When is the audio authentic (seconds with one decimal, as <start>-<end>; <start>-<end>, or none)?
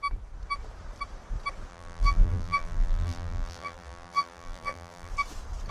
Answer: 0.0-1.7; 5.1-5.7